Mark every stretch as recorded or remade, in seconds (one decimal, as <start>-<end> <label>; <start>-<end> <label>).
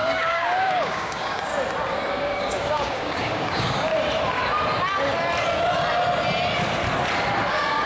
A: 0.0-1.5 remade; 1.5-2.1 recorded; 2.1-3.9 remade; 3.9-7.5 recorded; 7.5-7.9 remade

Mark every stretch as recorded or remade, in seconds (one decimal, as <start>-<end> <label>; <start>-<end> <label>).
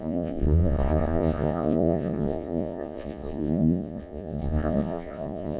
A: 0.0-5.6 remade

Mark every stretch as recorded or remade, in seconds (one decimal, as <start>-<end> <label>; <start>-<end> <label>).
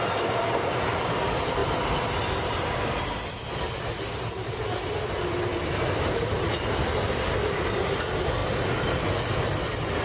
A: 0.0-10.0 recorded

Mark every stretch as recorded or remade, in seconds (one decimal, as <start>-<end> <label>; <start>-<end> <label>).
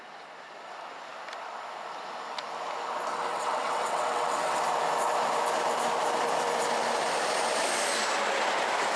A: 0.0-3.1 recorded; 3.1-4.6 remade; 4.6-9.0 recorded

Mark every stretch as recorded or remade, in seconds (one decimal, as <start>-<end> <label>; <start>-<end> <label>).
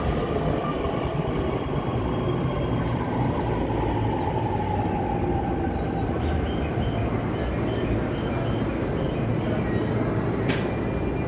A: 0.0-11.3 recorded